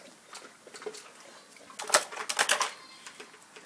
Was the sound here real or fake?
real